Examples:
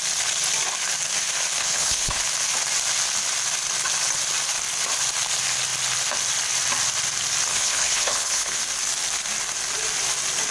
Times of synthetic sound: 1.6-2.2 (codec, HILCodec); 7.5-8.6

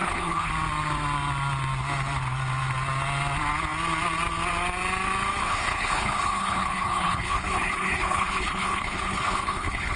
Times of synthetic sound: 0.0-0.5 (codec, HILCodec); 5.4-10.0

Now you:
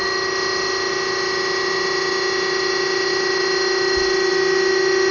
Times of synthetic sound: none

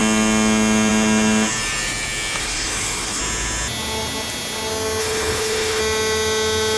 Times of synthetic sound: 2.4-3.2 (codec, HILCodec); 5.0-5.8

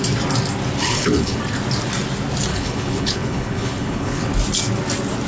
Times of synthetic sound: 0.8-1.4 (codec, HILCodec); 2.5-4.3

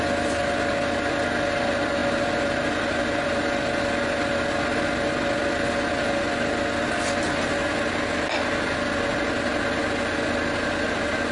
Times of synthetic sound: none

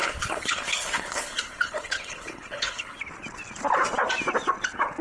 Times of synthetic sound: 0.0-3.0 (codec, HILCodec)